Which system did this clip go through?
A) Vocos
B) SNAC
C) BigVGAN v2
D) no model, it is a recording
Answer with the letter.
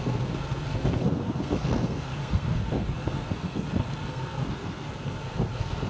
B